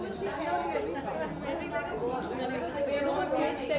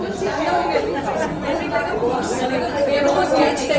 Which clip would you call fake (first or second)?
second